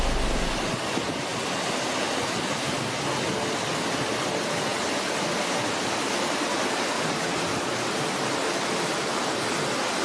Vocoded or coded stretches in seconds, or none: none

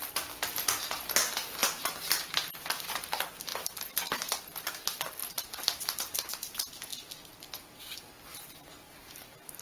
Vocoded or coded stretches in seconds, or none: 5.2-6.3 (vocoder, BigVGAN v2)

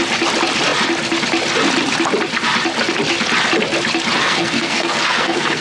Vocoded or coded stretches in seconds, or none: 4.2-5.6 (codec, SNAC)

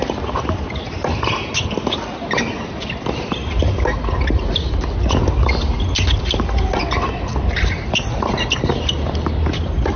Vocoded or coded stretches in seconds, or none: none

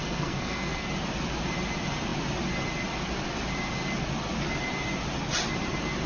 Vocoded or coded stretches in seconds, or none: 0.0-0.9 (codec, SNAC)

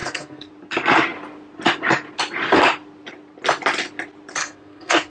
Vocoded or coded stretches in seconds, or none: 0.0-0.5 (codec, SNAC); 4.4-5.1

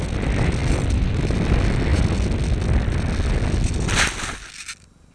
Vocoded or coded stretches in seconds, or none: none